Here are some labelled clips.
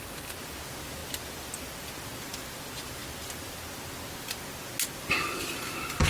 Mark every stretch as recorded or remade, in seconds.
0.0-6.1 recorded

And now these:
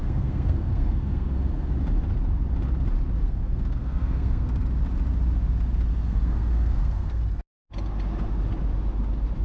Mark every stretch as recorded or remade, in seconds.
0.0-1.7 remade; 1.7-3.2 recorded; 3.2-4.7 remade; 4.7-5.9 recorded; 5.9-7.2 remade; 7.2-9.4 recorded

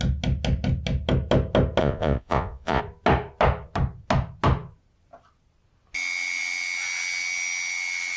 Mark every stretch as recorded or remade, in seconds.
0.0-1.8 recorded; 1.8-2.8 remade; 2.8-8.2 recorded